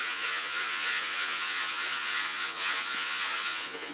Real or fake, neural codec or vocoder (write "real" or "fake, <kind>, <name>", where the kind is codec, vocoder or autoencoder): fake, vocoder, Vocos